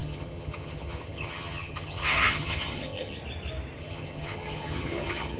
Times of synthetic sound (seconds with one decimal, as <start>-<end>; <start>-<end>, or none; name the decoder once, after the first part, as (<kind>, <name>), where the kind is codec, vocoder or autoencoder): 0.0-3.2 (vocoder, HiFi-GAN); 3.8-5.4